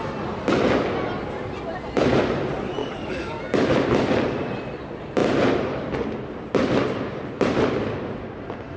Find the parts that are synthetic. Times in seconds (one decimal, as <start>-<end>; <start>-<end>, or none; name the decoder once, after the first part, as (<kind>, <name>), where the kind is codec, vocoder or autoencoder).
2.8-3.4 (codec, DAC)

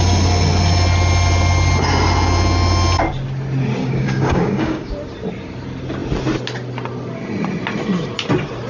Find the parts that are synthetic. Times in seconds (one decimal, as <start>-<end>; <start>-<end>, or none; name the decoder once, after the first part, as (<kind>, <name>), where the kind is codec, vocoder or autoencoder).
3.8-4.9 (codec, DAC)

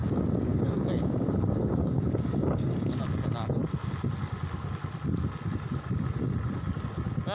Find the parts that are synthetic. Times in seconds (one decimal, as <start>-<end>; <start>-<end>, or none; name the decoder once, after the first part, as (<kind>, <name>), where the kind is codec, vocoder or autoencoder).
0.5-3.0 (codec, DAC)

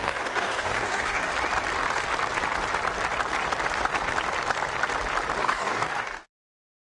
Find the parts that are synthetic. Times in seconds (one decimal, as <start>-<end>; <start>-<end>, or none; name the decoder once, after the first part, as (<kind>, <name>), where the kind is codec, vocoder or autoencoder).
0.0-1.3 (codec, DAC); 5.4-6.9

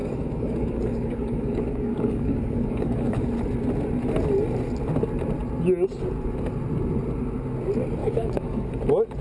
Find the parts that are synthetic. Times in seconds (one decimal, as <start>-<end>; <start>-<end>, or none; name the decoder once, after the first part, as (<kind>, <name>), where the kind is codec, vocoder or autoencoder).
0.0-3.3 (codec, DAC); 8.0-8.7

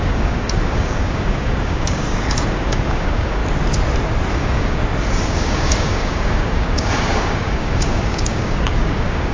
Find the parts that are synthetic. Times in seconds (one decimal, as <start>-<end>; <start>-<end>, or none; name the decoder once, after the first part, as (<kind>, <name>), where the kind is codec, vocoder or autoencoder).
0.0-3.4 (codec, DAC); 4.3-4.8; 5.3-9.3

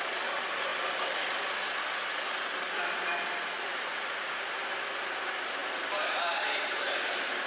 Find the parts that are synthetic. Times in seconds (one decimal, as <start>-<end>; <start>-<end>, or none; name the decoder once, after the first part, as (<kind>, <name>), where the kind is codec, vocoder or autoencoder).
none

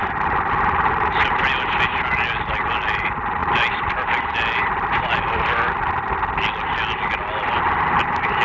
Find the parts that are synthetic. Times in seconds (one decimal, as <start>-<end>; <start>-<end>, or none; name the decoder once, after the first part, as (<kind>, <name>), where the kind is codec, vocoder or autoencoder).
none